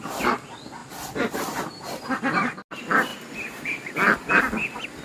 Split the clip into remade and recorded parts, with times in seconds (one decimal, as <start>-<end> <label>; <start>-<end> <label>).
0.0-0.8 recorded; 0.8-2.2 remade; 2.2-3.1 recorded; 3.1-4.4 remade; 4.4-5.0 recorded